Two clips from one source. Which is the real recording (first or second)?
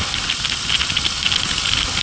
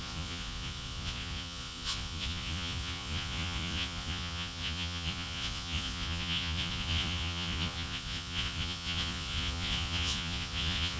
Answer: first